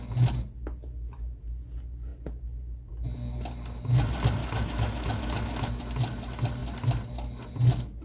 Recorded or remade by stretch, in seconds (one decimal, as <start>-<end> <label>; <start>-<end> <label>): 0.0-4.4 recorded; 4.4-5.7 remade; 5.7-8.0 recorded